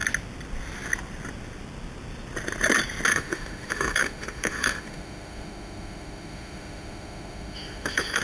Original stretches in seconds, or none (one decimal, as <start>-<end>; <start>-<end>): 0.0-3.1